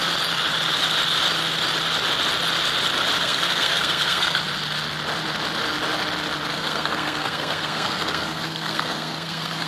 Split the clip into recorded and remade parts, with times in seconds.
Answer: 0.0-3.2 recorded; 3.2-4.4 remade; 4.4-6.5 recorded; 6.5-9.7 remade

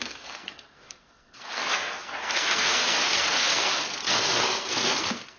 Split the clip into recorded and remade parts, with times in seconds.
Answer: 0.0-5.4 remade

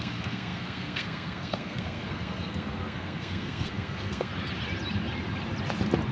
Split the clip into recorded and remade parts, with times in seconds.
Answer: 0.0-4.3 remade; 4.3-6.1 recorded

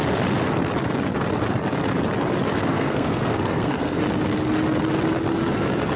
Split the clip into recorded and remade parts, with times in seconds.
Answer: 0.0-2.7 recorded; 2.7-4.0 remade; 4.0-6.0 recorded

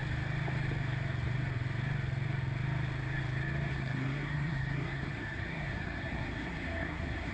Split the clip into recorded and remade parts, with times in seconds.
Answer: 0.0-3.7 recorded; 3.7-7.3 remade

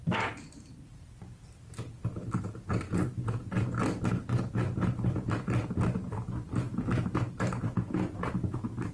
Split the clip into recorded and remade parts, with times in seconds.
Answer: 0.0-8.9 recorded

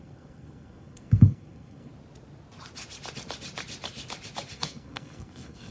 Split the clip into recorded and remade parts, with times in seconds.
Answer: 0.0-1.9 remade; 1.9-4.5 recorded; 4.5-5.7 remade

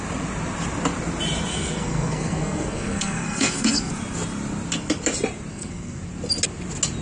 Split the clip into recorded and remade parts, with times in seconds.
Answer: 0.0-1.5 recorded; 1.5-3.9 remade; 3.9-5.5 recorded; 5.5-6.0 remade; 6.0-7.0 recorded